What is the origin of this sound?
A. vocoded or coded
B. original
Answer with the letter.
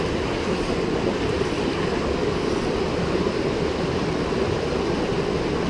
B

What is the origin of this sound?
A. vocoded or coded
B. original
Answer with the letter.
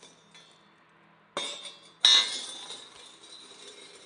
B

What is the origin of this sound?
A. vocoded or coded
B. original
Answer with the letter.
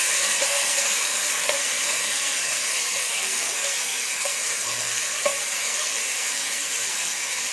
A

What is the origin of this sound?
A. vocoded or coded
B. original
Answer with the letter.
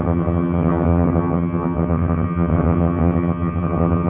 A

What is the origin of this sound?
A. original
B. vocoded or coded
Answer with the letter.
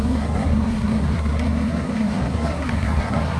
B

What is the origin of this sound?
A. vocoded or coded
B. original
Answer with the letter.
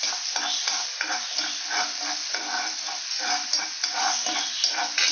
B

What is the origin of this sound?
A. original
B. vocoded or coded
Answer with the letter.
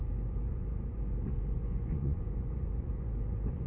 B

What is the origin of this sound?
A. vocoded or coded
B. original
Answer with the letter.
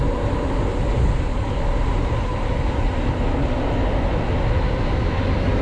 B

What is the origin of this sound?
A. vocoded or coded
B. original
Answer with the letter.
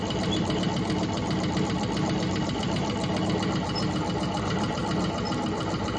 B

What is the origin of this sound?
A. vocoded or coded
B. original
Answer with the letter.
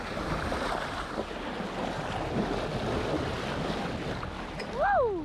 B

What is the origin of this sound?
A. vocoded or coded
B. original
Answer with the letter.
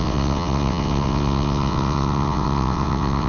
A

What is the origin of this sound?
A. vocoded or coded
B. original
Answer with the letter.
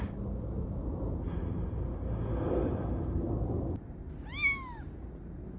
B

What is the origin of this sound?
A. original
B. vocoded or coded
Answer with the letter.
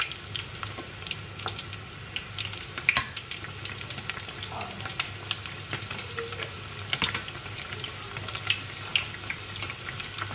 A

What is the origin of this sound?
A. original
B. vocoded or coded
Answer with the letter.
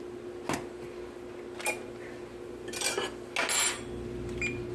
A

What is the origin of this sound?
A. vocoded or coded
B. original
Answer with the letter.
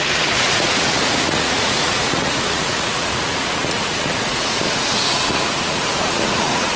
A